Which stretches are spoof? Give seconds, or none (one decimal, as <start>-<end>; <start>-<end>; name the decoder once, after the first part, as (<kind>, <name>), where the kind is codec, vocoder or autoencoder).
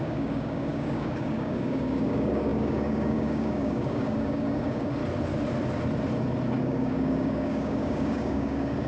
0.0-5.0 (codec, DAC); 6.6-8.9